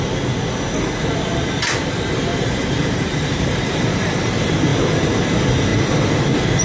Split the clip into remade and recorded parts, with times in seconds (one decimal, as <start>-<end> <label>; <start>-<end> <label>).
0.0-2.3 recorded; 2.3-4.3 remade; 4.3-6.6 recorded